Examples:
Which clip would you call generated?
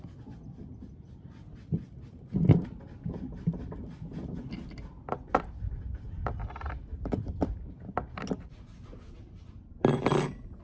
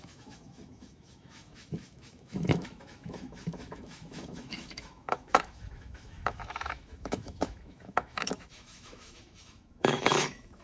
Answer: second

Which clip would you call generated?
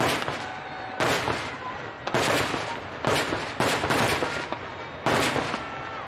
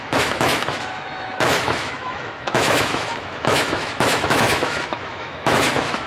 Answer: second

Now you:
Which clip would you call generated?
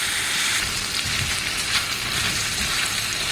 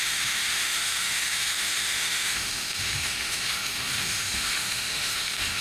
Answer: second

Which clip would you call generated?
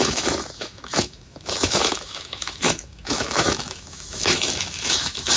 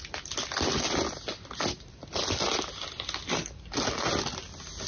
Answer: first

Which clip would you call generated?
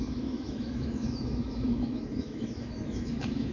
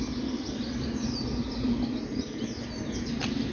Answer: first